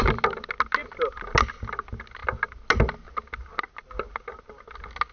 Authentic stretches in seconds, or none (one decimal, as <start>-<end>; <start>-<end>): 0.0-5.1